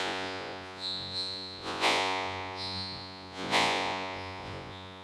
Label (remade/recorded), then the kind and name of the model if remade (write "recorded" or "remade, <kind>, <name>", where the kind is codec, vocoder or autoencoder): remade, vocoder, Vocos